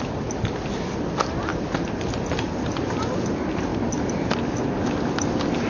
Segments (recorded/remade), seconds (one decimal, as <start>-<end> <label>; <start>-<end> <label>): 0.0-5.7 recorded